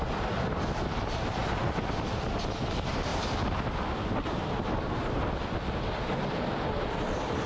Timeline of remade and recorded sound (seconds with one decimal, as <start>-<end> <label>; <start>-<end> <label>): 0.0-1.4 remade; 1.4-2.6 recorded; 2.6-3.1 remade; 3.1-6.2 recorded; 6.2-7.5 remade